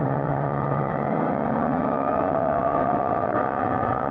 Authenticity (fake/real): fake